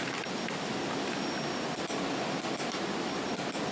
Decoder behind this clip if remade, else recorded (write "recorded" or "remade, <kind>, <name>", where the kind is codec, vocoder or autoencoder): recorded